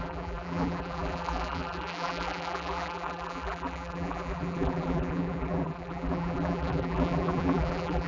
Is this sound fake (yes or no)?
yes